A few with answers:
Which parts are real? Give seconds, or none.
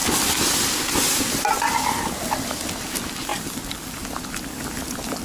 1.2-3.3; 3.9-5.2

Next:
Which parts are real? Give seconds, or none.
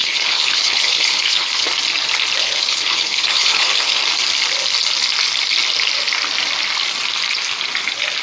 1.7-2.4; 4.0-8.2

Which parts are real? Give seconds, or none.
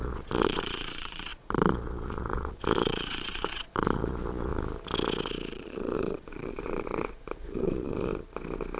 4.5-5.5; 8.1-8.8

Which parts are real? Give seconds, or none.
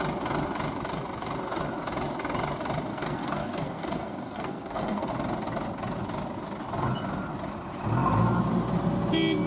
0.0-2.9; 5.1-9.5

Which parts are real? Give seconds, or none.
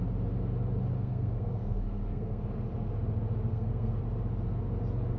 0.0-0.9; 2.4-3.5; 4.0-5.2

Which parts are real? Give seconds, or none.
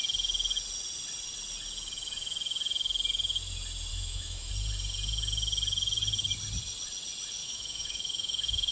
0.0-3.9; 4.5-7.4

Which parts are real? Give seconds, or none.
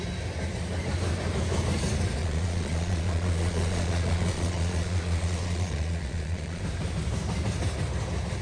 0.0-2.2; 6.6-8.4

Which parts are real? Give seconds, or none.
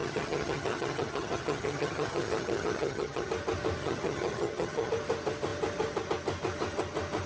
3.3-3.8; 4.9-7.3